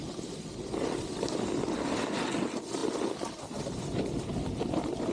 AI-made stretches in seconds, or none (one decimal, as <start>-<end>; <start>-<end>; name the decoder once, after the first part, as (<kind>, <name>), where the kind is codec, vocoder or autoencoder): none